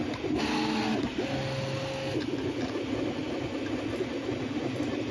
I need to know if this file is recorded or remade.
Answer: recorded